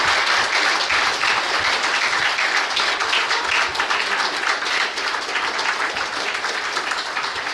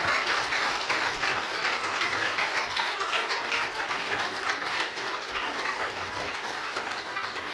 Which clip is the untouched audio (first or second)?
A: first